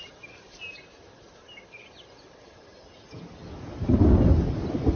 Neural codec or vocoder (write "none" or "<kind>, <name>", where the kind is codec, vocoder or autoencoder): none